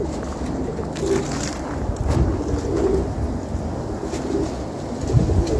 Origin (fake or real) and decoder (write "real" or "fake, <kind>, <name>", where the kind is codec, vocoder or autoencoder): real